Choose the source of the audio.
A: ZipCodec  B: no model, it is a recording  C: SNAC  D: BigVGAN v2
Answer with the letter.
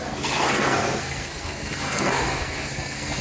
C